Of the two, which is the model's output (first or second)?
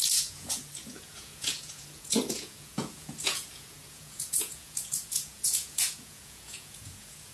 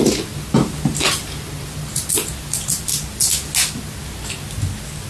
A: first